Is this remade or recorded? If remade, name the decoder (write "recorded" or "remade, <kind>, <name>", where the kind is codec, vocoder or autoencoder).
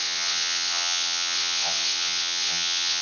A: remade, vocoder, WaveNeXt